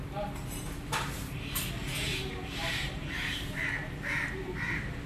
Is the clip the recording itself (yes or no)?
no